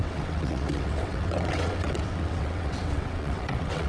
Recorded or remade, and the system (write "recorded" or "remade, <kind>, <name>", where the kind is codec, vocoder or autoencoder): remade, vocoder, WaveNeXt